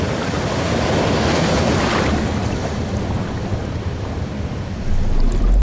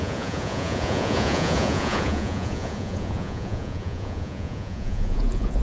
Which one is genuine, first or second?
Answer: first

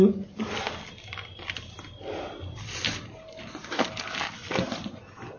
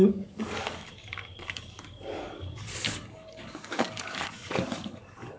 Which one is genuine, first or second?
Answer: first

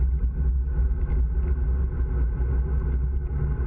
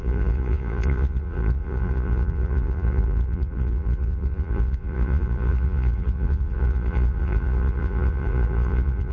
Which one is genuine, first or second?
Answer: first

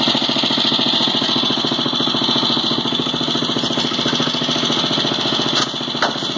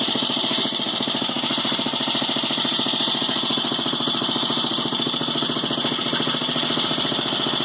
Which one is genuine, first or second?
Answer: first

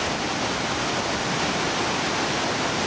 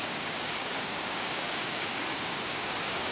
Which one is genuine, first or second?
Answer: first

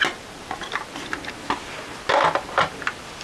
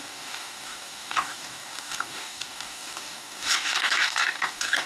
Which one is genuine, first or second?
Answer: first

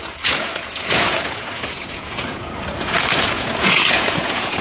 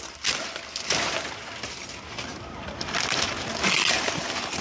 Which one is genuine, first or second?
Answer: second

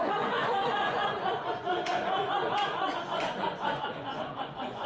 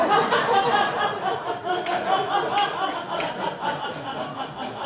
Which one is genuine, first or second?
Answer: second